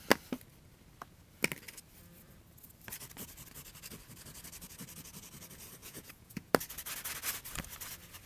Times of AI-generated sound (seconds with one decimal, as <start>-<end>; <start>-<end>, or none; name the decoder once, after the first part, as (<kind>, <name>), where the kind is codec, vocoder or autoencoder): 5.8-6.5 (vocoder, Vocos)